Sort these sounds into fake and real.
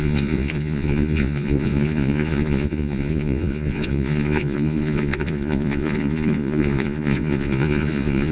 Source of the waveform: fake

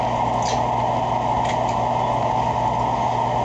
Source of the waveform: real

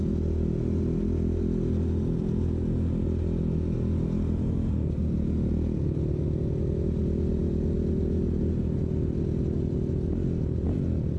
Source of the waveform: real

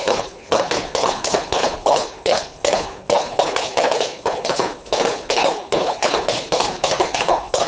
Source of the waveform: fake